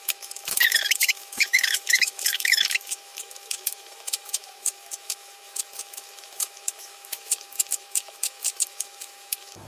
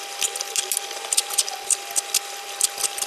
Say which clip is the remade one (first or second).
first